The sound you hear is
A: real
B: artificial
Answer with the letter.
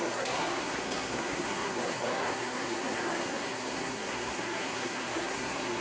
B